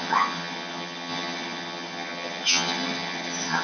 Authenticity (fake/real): fake